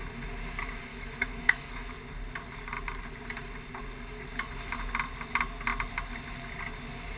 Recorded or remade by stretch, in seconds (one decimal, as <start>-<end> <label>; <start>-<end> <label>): 0.0-0.9 recorded; 0.9-1.9 remade; 1.9-7.2 recorded

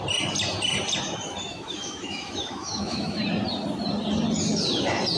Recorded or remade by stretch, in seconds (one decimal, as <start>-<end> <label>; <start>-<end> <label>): 0.0-1.5 recorded; 1.5-3.2 remade; 3.2-5.2 recorded

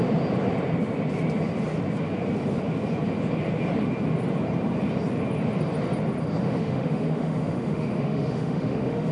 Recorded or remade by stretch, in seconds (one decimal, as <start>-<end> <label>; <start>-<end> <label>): 0.0-6.4 recorded; 6.4-9.1 remade

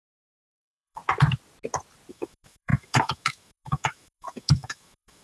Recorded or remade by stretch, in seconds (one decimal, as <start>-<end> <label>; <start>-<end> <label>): 0.0-1.0 remade; 1.0-2.1 recorded; 2.1-5.2 remade

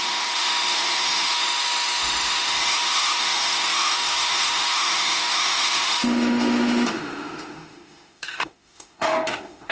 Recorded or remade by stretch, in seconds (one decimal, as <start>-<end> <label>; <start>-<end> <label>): 0.0-9.7 remade

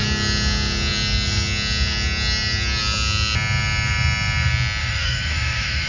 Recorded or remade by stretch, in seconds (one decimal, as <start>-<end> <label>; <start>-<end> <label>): 0.0-4.8 recorded; 4.8-5.9 remade

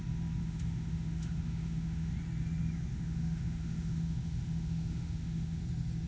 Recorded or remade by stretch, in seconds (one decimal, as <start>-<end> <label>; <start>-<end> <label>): 0.0-0.4 recorded; 0.4-2.1 remade; 2.1-2.9 recorded; 2.9-5.6 remade; 5.6-6.1 recorded

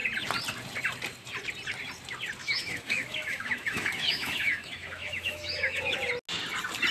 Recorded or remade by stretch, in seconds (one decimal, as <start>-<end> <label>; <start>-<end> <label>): 0.0-2.4 recorded; 2.4-5.8 remade; 5.8-6.9 recorded